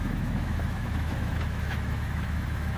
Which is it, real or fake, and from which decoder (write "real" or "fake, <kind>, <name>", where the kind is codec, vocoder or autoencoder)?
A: fake, autoencoder, DAC-VAE